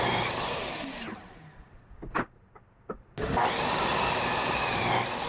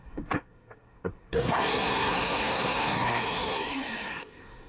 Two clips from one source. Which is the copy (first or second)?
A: second